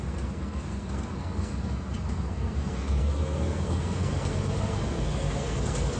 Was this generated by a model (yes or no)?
yes